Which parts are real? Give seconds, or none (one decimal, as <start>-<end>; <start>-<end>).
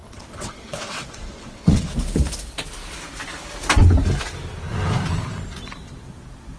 1.9-6.6